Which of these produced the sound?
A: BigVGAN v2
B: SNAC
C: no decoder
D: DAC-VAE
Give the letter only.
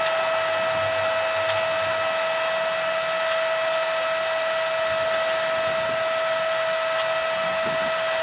C